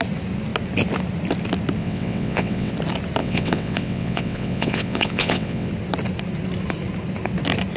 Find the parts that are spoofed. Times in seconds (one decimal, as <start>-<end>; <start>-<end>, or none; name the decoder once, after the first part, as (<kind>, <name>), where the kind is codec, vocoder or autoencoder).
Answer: 1.8-2.7 (vocoder, WaveNeXt); 3.2-5.7